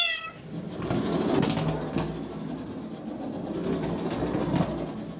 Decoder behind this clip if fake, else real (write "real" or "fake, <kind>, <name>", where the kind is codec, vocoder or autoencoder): real